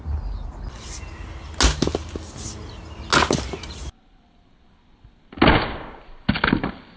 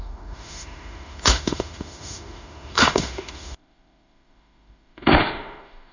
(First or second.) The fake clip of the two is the second